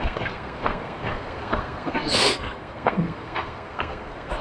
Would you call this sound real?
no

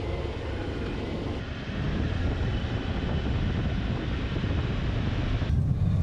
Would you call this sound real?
yes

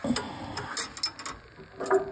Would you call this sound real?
yes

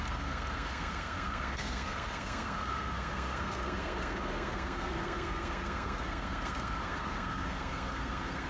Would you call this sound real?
no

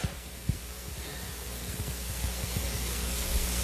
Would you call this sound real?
no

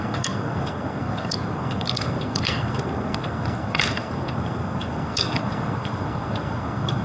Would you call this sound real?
no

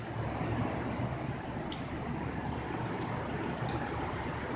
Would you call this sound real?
yes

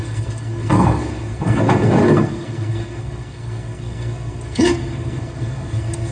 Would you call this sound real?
no